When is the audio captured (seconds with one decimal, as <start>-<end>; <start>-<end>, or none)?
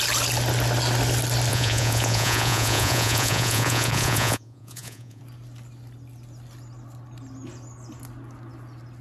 0.0-1.5; 5.2-9.0